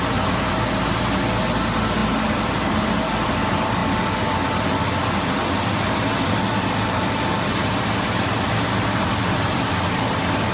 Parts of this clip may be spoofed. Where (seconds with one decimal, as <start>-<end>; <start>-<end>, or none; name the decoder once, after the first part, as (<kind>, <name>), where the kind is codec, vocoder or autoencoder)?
none